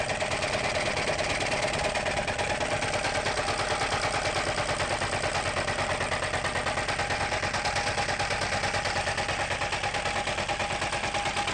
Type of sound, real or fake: real